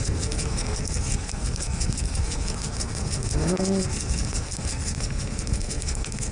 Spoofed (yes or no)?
yes